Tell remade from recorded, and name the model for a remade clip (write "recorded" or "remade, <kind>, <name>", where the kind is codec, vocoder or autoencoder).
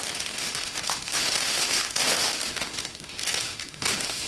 remade, autoencoder, DAC-VAE